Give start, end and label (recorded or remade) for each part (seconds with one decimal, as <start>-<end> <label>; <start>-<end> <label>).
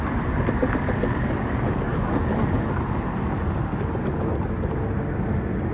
0.0-0.6 recorded; 0.6-4.0 remade; 4.0-5.7 recorded